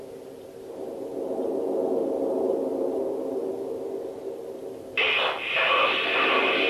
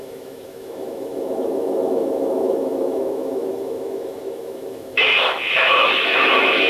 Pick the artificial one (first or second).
second